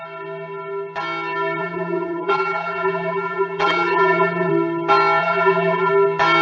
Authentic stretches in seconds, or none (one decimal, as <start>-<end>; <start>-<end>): 0.0-1.6; 4.5-5.2; 5.9-6.4